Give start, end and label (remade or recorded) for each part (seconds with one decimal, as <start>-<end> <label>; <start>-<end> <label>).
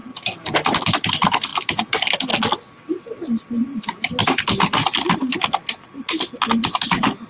0.0-3.6 recorded; 3.6-4.2 remade; 4.2-7.3 recorded